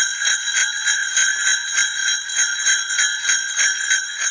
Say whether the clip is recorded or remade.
recorded